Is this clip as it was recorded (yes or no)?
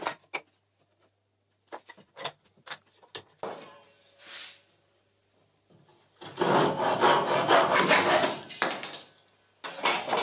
yes